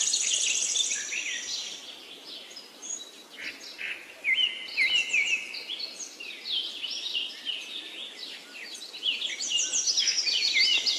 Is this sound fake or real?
real